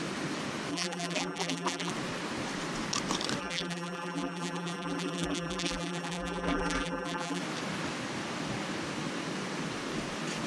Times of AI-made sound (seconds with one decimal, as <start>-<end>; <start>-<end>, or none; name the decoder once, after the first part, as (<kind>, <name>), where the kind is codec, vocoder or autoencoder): 0.7-1.9 (vocoder, BigVGAN v2); 3.4-7.4